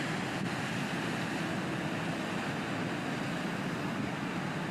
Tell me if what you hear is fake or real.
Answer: real